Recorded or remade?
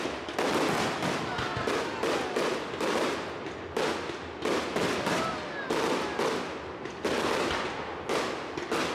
recorded